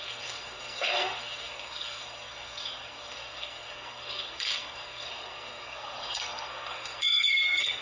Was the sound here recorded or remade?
remade